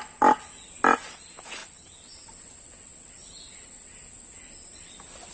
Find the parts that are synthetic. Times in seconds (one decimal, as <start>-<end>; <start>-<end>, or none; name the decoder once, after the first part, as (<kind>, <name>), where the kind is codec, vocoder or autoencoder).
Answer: none